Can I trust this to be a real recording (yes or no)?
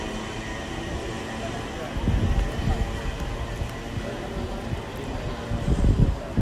yes